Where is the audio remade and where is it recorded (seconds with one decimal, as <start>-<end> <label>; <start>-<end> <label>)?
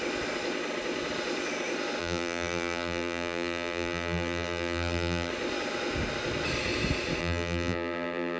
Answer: 0.0-2.0 recorded; 2.0-5.3 remade; 5.3-7.2 recorded; 7.2-8.4 remade